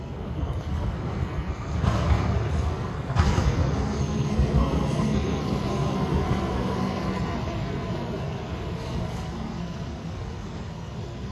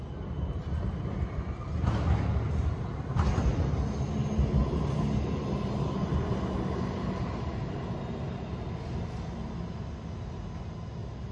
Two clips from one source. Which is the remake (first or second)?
first